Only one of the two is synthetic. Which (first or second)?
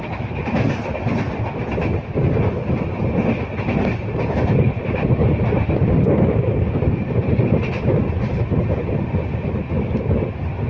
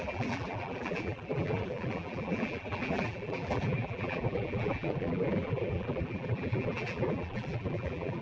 second